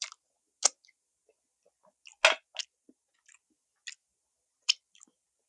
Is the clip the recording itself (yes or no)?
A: yes